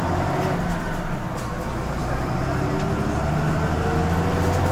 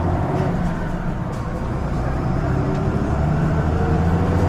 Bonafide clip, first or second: first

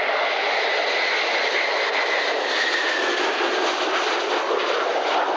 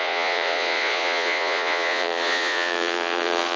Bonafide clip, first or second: first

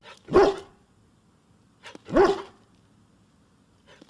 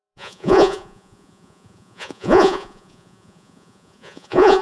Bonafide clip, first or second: first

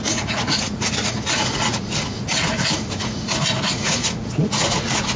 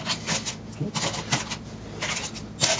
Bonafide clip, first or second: second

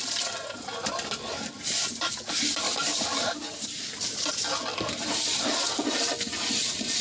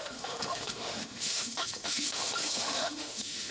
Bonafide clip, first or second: first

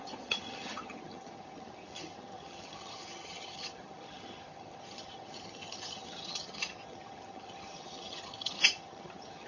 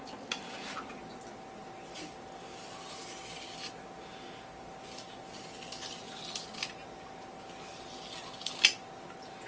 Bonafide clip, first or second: second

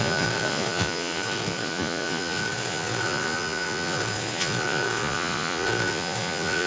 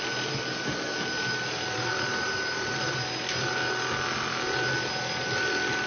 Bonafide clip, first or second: second